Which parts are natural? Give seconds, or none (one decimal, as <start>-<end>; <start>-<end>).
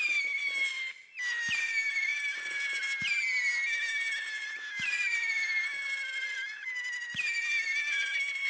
2.1-4.2